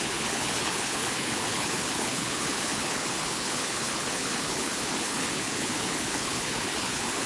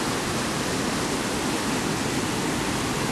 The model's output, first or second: first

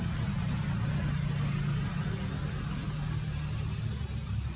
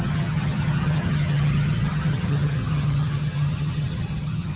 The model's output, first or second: second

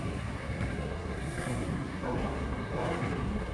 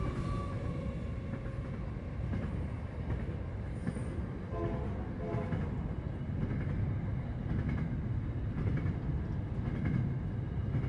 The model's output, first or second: first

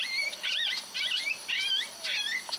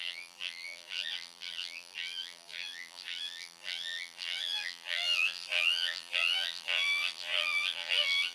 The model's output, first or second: second